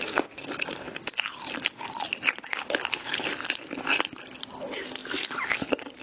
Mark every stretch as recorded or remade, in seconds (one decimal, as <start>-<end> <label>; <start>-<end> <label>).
0.0-2.5 recorded; 2.5-3.2 remade; 3.2-6.0 recorded